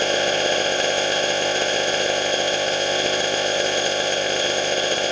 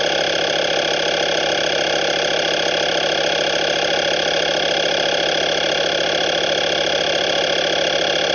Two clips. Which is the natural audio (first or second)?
second